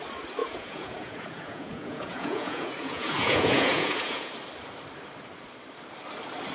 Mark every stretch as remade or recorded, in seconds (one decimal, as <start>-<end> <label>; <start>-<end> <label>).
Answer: 0.0-0.4 recorded; 0.4-4.3 remade; 4.3-6.5 recorded